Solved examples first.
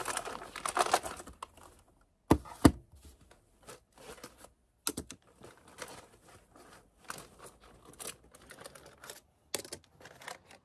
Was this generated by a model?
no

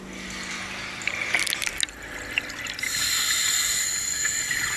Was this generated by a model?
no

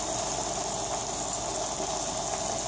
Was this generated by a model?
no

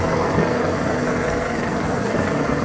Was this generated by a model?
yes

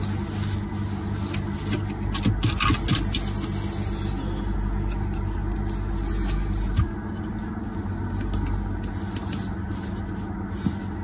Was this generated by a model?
no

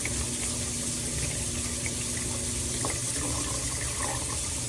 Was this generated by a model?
no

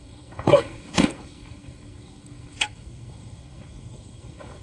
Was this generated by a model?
yes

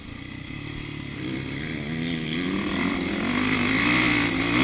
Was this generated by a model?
no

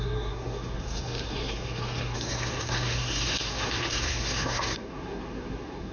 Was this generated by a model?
yes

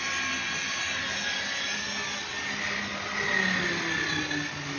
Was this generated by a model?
no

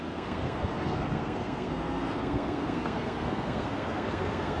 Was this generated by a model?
yes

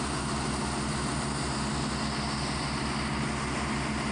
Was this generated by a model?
no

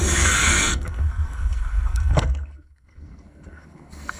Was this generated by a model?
yes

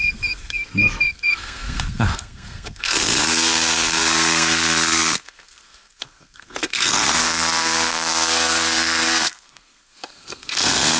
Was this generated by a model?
yes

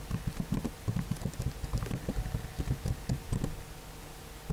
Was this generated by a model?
no